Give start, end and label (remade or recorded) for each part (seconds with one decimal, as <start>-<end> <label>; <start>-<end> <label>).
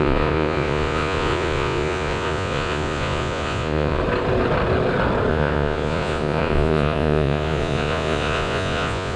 0.0-4.0 remade; 4.0-5.3 recorded; 5.3-9.2 remade